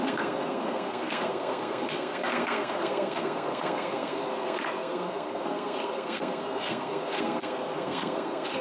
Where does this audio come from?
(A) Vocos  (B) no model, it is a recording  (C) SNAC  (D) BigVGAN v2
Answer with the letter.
C